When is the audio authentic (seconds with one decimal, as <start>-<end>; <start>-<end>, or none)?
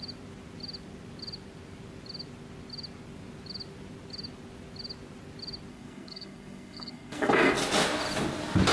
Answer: 0.0-5.7; 7.5-8.7